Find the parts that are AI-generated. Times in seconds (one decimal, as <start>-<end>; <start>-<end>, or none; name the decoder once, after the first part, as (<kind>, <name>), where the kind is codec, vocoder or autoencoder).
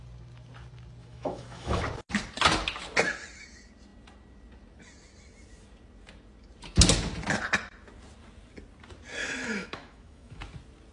1.0-1.8 (autoencoder, DAC-VAE); 9.2-10.4